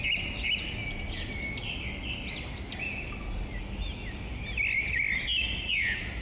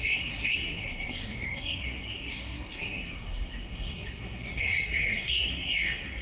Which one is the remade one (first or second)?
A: second